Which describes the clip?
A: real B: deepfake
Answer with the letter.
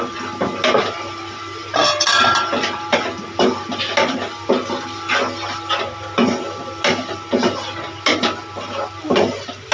A